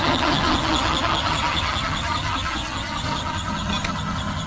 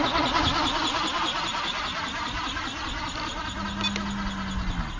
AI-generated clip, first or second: first